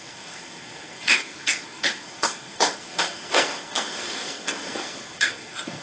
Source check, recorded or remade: remade